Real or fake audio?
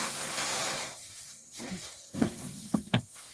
fake